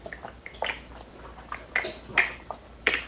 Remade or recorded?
recorded